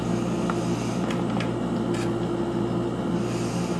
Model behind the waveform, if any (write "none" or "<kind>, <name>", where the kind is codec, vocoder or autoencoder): none